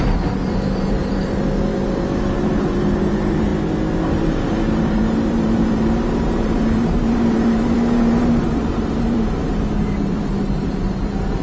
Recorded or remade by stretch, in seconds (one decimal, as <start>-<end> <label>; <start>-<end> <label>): 0.0-3.5 remade; 3.5-4.1 recorded; 4.1-11.4 remade